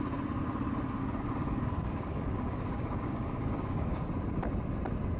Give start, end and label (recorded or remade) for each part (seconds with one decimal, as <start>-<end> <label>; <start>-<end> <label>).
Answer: 0.0-1.0 recorded; 1.0-4.1 remade; 4.1-5.2 recorded